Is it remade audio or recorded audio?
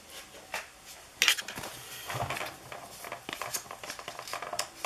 recorded